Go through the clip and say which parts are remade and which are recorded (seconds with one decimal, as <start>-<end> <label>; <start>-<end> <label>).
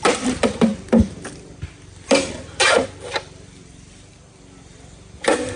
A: 0.0-5.6 remade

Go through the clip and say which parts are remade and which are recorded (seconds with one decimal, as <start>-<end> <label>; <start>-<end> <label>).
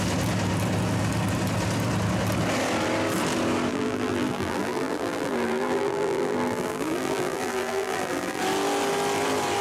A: 0.0-3.7 recorded; 3.7-8.4 remade; 8.4-9.6 recorded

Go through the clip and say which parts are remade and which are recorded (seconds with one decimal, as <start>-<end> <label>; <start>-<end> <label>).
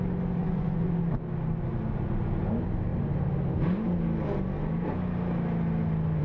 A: 0.0-0.4 recorded; 0.4-0.9 remade; 0.9-6.2 recorded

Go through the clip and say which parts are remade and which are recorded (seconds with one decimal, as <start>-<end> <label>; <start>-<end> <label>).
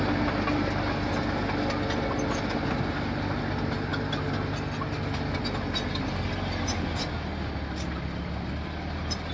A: 0.0-9.3 recorded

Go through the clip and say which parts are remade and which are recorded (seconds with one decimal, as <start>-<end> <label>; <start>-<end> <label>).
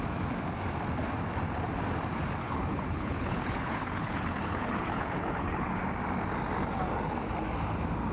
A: 0.0-2.4 recorded; 2.4-5.8 remade; 5.8-8.1 recorded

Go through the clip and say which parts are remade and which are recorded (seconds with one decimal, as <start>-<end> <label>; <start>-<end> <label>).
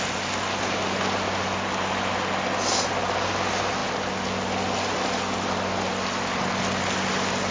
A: 0.0-7.5 recorded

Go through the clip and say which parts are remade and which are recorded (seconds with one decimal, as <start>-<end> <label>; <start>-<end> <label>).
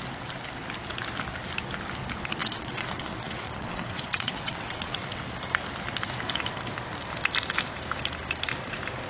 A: 0.0-2.4 recorded; 2.4-5.2 remade; 5.2-9.1 recorded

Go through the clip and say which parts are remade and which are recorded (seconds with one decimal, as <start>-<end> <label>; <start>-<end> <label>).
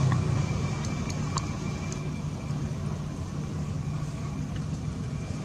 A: 0.0-3.6 recorded; 3.6-4.3 remade; 4.3-5.4 recorded